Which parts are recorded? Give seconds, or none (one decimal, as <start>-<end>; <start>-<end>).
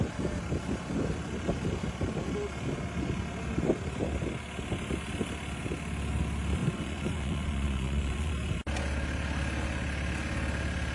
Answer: 0.0-6.6; 8.3-10.9